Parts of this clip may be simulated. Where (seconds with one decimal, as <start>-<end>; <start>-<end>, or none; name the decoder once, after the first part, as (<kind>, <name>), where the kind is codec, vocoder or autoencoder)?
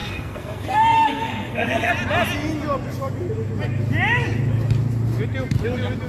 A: 0.0-1.9 (codec, SNAC)